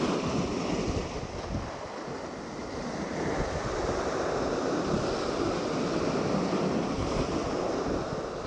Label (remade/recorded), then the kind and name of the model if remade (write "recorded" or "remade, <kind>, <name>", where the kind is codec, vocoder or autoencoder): recorded